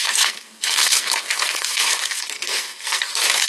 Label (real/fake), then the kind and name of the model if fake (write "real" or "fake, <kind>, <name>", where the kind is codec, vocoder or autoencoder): fake, codec, SNAC